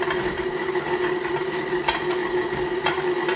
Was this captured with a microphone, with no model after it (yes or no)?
yes